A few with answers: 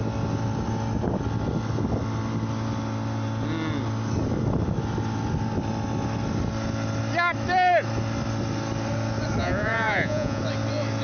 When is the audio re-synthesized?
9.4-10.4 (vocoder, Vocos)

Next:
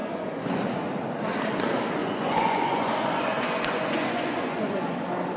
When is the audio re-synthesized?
0.0-0.6 (vocoder, Vocos); 2.0-4.9